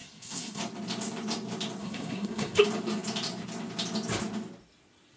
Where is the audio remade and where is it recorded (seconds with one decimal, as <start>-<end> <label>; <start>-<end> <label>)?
0.0-0.6 remade; 0.6-1.8 recorded; 1.8-2.6 remade; 2.6-5.2 recorded